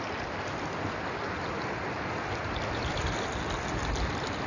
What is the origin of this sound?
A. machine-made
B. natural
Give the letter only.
B